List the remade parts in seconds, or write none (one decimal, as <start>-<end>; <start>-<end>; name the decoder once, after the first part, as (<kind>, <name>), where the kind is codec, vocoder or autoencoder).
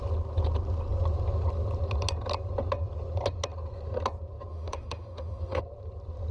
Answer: 4.5-5.6 (autoencoder, DAC-VAE)